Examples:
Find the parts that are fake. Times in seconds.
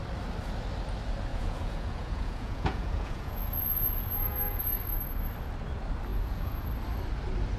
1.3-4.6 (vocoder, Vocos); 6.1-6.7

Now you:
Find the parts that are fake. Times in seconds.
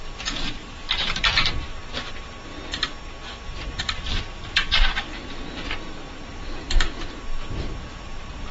none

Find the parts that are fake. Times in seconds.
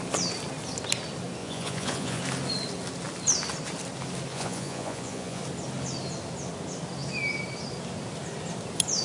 1.4-2.2 (vocoder, Vocos); 4.3-5.4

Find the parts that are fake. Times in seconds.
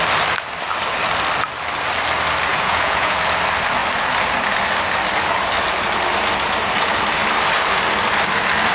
2.5-3.2 (vocoder, Vocos)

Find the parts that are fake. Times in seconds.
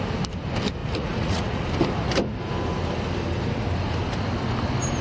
0.8-1.7 (vocoder, Vocos)